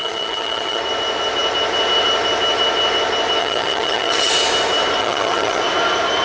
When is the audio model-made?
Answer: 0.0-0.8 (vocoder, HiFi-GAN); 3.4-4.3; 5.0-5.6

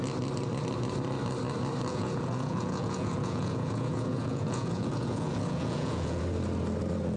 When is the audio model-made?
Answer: 1.9-6.2 (vocoder, Vocos)

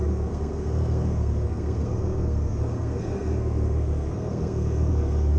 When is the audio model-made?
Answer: 0.0-5.4 (codec, SNAC)